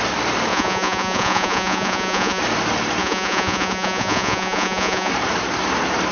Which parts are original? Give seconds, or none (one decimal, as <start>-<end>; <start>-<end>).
0.0-0.5; 2.4-3.0; 5.1-6.1